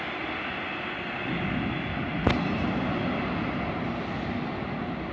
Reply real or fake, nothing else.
real